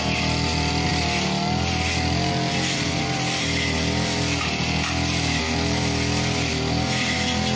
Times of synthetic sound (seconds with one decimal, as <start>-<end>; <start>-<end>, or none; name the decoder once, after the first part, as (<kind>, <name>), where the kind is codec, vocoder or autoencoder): none